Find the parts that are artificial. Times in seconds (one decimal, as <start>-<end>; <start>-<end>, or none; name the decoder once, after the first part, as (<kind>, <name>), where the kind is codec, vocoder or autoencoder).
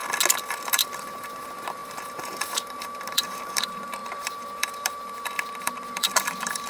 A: 0.6-6.7 (vocoder, BigVGAN v2)